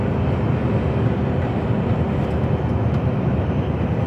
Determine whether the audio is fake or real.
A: real